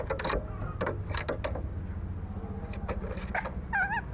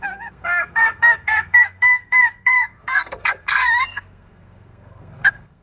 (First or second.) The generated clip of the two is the second